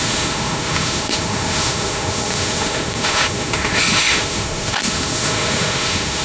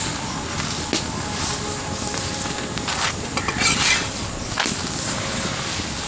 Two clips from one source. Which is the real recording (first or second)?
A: second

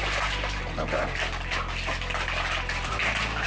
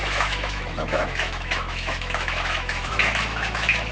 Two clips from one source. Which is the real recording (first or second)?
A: first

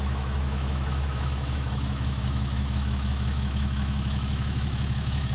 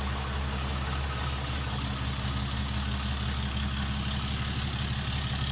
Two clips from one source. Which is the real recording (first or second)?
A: second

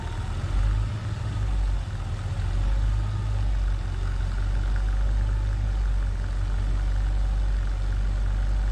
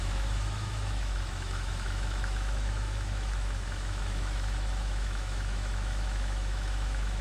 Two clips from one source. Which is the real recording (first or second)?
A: first